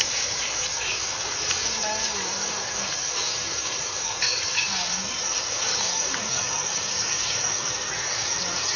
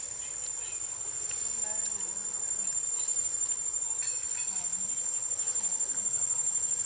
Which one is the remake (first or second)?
first